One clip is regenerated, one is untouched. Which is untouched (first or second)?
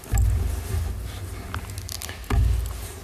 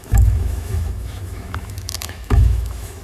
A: first